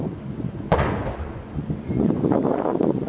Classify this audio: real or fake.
fake